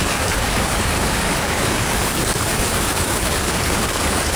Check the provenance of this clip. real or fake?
fake